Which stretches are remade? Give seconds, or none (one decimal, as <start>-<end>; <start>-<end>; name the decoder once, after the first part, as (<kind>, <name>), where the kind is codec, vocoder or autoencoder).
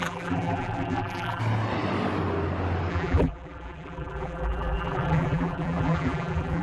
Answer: 0.0-1.4 (vocoder, BigVGAN v2); 2.9-6.6